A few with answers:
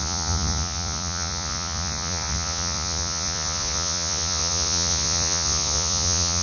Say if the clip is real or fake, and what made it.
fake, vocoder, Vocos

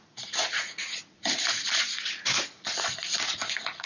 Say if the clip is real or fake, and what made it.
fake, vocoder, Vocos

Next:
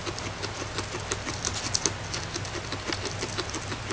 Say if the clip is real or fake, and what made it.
real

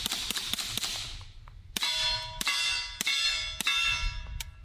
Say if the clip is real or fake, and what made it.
real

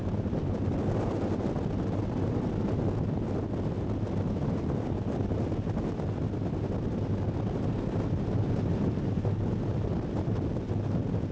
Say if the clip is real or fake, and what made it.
real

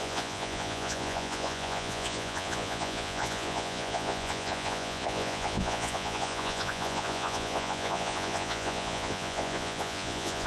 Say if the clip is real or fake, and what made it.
fake, vocoder, Vocos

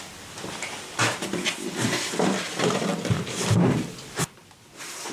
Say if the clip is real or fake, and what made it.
real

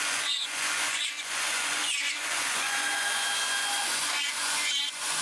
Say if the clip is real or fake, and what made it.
fake, vocoder, Vocos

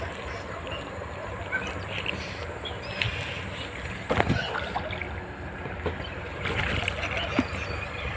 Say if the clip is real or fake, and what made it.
real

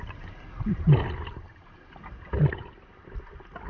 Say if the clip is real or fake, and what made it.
real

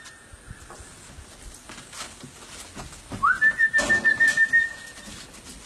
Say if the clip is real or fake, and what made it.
real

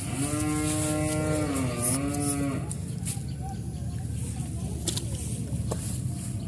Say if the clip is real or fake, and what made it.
real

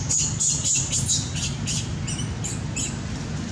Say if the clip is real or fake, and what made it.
real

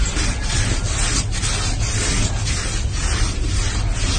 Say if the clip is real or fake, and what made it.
real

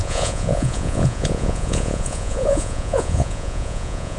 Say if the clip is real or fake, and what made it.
fake, vocoder, Vocos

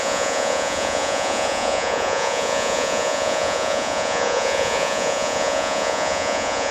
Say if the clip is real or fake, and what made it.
fake, vocoder, Vocos